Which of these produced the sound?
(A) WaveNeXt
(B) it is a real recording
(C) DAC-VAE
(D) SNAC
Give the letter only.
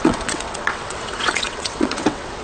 A